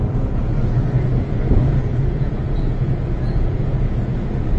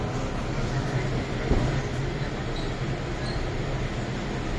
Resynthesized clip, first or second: first